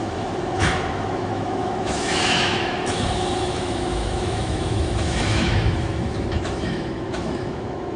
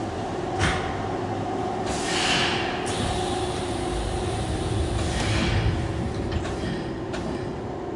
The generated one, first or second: first